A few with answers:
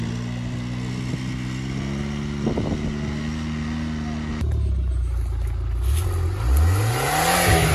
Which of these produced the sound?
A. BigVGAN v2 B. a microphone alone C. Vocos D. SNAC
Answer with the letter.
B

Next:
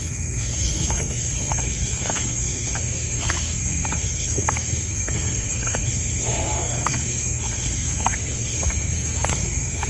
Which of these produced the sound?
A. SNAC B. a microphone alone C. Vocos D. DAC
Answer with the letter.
A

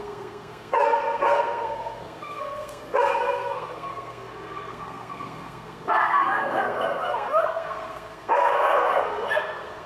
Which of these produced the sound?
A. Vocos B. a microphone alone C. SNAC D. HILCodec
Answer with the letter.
C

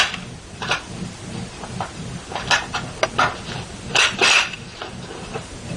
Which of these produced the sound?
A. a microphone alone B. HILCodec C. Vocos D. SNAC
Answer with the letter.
A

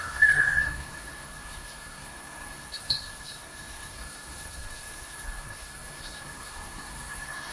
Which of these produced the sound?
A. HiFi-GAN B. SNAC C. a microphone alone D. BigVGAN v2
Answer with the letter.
B